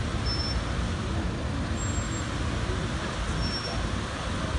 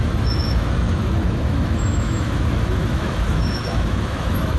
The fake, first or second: second